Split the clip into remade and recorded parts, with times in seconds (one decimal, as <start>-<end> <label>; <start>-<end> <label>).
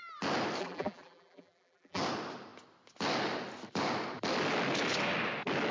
0.0-0.6 recorded; 0.6-2.0 remade; 2.0-5.7 recorded